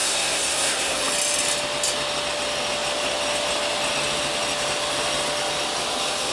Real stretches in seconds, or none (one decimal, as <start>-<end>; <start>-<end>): 1.0-6.3